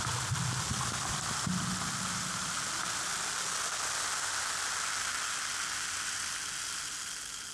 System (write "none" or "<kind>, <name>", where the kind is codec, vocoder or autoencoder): none